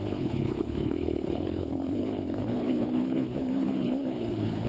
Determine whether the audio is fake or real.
fake